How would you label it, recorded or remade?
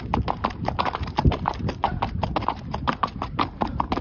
remade